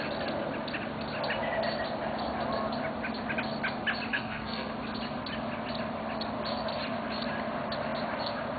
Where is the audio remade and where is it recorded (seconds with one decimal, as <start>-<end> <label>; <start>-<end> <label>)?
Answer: 0.0-4.1 recorded; 4.1-4.7 remade; 4.7-8.6 recorded

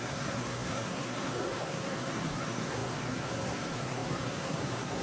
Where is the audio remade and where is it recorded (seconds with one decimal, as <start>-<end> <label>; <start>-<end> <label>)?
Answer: 0.0-5.0 remade

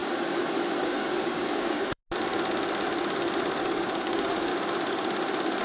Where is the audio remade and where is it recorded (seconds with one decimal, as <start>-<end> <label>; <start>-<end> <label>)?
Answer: 0.0-0.8 recorded; 0.8-2.0 remade; 2.0-3.6 recorded; 3.6-4.5 remade; 4.5-5.6 recorded

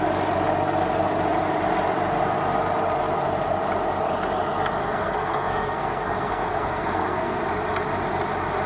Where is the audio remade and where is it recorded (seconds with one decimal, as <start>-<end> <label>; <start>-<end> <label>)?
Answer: 0.0-4.8 recorded; 4.8-7.4 remade; 7.4-8.7 recorded